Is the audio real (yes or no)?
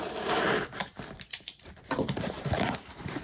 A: no